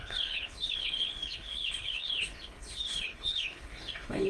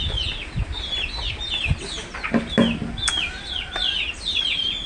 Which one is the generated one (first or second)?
first